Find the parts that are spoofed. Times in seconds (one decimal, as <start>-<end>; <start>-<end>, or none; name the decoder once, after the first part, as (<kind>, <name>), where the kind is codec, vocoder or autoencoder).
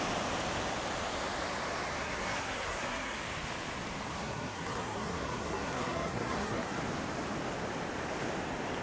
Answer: 2.0-3.2 (codec, SNAC); 4.2-6.8